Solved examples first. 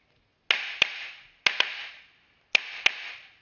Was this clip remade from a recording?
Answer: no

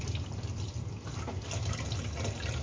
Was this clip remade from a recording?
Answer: no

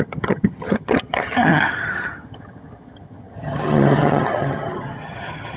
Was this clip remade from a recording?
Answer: yes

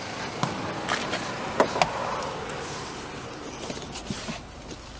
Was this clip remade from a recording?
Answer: no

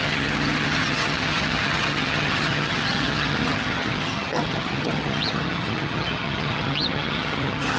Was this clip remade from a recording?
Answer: yes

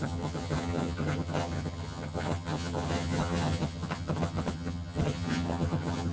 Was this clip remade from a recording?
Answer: yes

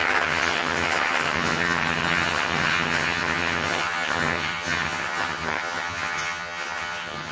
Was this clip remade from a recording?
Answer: yes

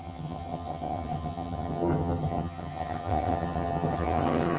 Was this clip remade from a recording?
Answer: yes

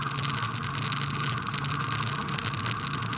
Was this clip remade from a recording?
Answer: no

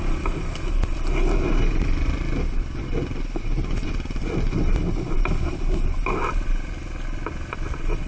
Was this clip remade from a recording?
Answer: no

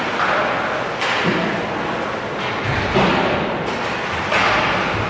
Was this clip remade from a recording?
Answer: no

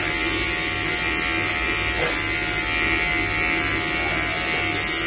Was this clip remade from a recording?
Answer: no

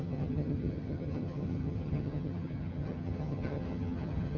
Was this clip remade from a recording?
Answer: yes